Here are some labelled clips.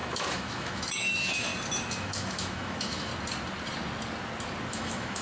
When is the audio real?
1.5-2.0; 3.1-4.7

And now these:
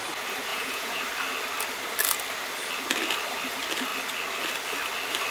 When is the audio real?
0.0-0.5; 1.0-5.3

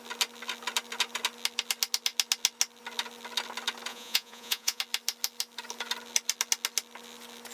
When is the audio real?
0.0-3.9; 4.8-7.5

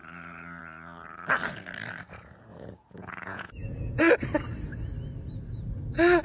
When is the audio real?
0.0-2.5; 4.0-6.2

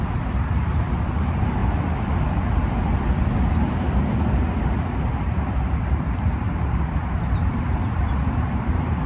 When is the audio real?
1.6-5.0

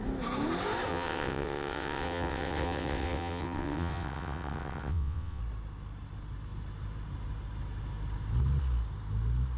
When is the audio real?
0.0-0.9; 5.4-9.6

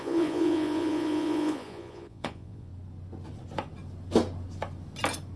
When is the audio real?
2.7-5.4